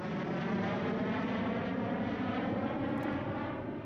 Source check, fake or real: real